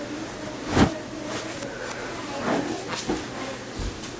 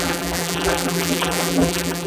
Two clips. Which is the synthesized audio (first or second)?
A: second